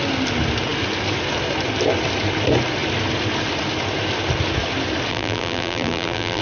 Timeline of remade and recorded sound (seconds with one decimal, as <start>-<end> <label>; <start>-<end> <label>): 0.0-5.1 recorded; 5.1-6.4 remade